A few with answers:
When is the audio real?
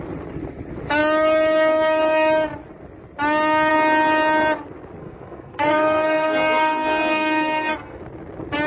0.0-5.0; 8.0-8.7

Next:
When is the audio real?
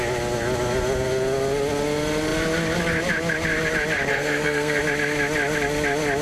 0.0-4.1; 4.8-6.2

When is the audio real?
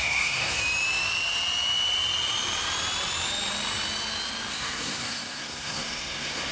0.6-4.5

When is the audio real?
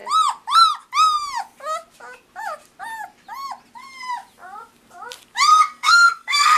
0.0-5.5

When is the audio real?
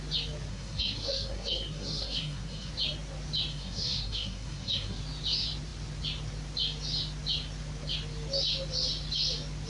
0.0-0.5; 2.7-3.5; 5.0-9.7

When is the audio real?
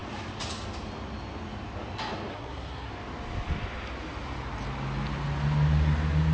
0.0-2.3; 2.9-6.3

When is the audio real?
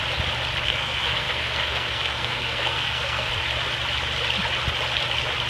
0.0-0.7; 3.3-5.5